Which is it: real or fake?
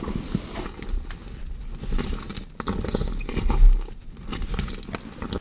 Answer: real